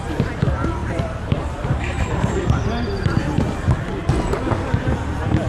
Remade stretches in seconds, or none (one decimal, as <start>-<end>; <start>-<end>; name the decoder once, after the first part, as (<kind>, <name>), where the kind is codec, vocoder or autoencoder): 0.8-2.3 (vocoder, BigVGAN v2)